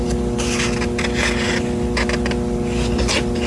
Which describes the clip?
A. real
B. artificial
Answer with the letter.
A